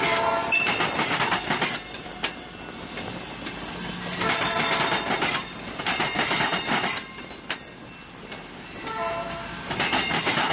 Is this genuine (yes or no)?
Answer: yes